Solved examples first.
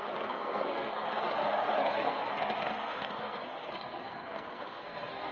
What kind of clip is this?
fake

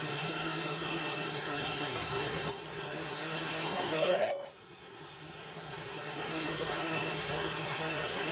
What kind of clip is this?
fake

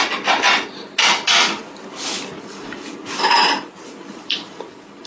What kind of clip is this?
real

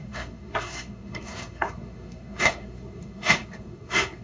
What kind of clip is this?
fake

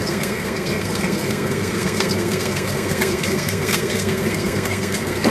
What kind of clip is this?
fake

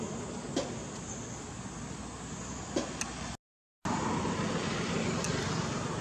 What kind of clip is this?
real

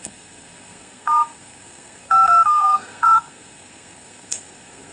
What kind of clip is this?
fake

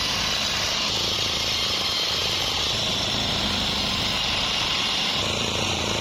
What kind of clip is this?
real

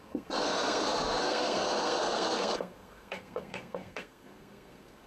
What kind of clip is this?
fake